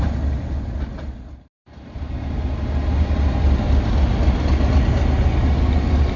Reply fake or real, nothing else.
real